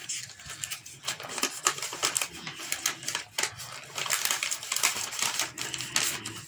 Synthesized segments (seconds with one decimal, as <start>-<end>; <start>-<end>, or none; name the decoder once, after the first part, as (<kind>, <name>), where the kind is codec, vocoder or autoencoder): 2.0-5.9 (vocoder, BigVGAN v2)